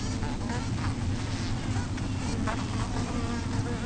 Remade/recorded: recorded